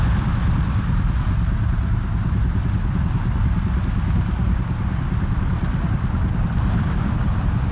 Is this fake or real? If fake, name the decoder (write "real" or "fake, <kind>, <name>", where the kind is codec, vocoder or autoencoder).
real